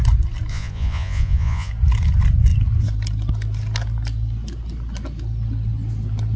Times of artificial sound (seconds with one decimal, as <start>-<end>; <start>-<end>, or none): 0.5-1.7